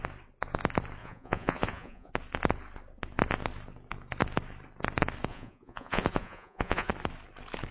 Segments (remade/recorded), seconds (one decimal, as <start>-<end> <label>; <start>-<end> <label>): 0.0-1.0 recorded; 1.0-2.1 remade; 2.1-5.3 recorded; 5.3-6.9 remade; 6.9-7.7 recorded